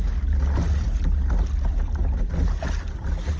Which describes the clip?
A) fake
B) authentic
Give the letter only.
B